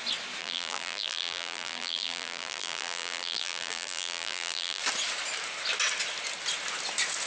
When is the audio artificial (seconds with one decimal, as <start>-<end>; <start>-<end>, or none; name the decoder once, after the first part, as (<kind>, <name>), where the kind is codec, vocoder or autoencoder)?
0.4-4.8 (vocoder, BigVGAN v2)